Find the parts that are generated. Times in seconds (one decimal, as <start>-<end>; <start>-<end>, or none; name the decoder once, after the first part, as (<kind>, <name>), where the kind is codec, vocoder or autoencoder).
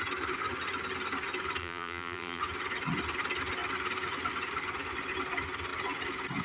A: 1.6-2.4 (vocoder, BigVGAN v2)